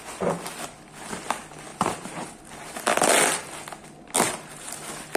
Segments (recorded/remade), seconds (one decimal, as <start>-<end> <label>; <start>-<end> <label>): 0.0-1.7 recorded; 1.7-2.4 remade; 2.4-5.2 recorded

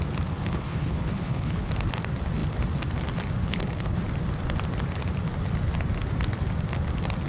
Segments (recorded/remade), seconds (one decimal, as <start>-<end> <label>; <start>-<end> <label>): 0.0-0.4 recorded; 0.4-1.7 remade; 1.7-3.4 recorded; 3.4-4.0 remade; 4.0-7.3 recorded

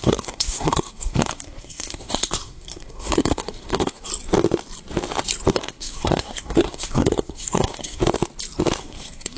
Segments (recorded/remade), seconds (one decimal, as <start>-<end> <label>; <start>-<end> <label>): 0.0-4.1 remade; 4.1-5.5 recorded; 5.5-8.0 remade; 8.0-8.8 recorded; 8.8-9.4 remade

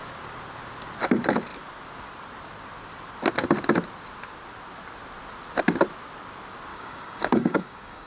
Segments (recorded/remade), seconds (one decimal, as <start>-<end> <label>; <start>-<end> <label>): 0.0-6.7 recorded; 6.7-8.1 remade

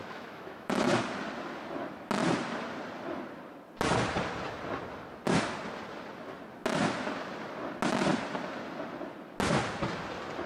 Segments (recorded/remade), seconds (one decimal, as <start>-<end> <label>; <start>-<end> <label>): 0.0-1.0 remade; 1.0-10.5 recorded

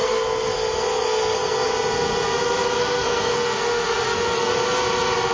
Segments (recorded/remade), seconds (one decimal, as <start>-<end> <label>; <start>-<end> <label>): 0.0-1.7 remade; 1.7-2.8 recorded; 2.8-4.5 remade; 4.5-5.3 recorded

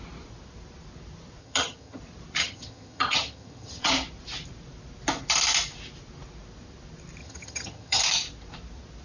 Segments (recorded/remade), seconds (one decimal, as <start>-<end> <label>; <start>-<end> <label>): 0.0-1.4 recorded; 1.4-2.0 remade; 2.0-2.4 recorded; 2.4-3.9 remade; 3.9-7.2 recorded; 7.2-8.0 remade; 8.0-9.0 recorded